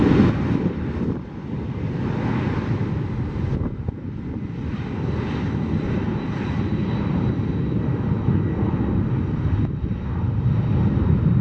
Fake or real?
real